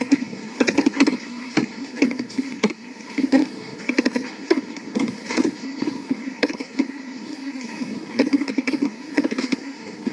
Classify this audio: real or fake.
fake